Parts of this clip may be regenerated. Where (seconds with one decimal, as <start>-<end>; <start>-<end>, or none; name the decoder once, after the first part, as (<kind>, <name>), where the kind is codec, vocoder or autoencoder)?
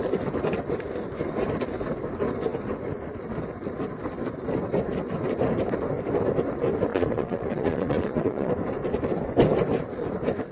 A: 6.9-8.5 (vocoder, Vocos)